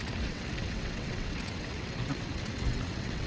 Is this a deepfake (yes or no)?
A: yes